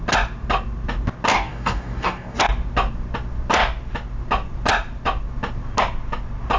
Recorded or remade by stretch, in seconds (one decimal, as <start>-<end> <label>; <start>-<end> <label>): 0.0-1.3 recorded; 1.3-2.4 remade; 2.4-6.6 recorded